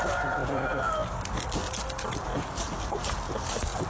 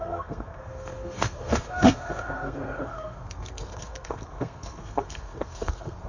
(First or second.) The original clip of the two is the first